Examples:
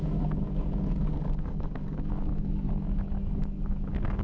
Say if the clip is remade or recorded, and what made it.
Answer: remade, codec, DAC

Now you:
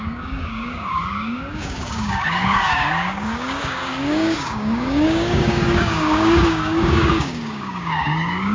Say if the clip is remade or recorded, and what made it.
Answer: remade, codec, DAC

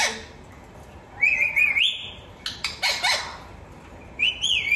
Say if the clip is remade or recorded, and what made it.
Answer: recorded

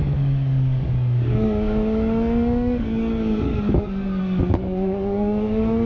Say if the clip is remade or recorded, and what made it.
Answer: remade, codec, DAC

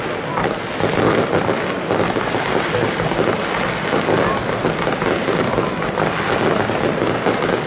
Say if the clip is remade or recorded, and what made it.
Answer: recorded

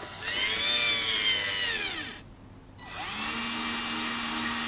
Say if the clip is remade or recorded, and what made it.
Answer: recorded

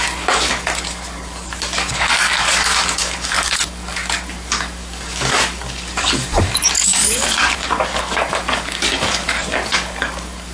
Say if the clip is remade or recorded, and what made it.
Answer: remade, codec, DAC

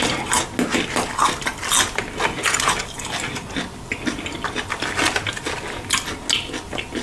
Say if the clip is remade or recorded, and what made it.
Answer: recorded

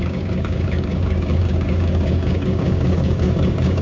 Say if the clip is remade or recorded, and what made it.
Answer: remade, codec, DAC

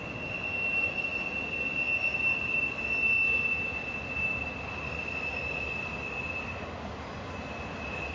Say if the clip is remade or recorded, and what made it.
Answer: recorded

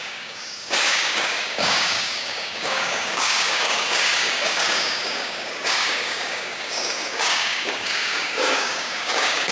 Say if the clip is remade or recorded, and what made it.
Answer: remade, codec, DAC